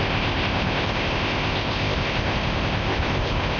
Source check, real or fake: fake